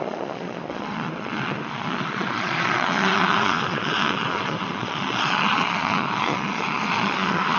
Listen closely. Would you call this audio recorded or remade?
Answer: remade